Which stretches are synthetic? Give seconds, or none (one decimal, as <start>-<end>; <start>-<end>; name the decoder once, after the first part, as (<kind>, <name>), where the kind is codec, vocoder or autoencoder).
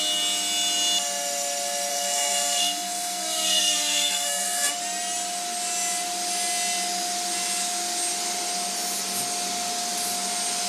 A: 1.9-4.7 (codec, SNAC)